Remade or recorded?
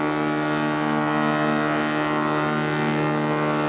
recorded